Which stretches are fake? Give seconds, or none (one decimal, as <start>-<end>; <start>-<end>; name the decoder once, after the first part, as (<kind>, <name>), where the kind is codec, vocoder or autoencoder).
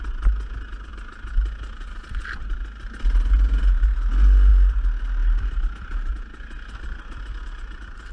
none